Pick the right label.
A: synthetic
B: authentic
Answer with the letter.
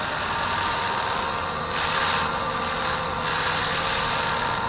B